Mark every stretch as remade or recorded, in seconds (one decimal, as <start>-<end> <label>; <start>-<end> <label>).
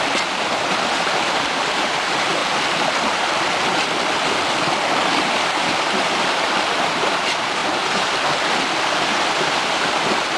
0.0-2.4 remade; 2.4-6.1 recorded; 6.1-10.4 remade